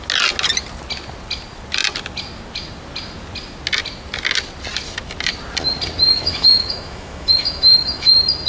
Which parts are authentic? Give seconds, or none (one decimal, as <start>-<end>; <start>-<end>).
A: 0.0-6.1; 8.1-8.5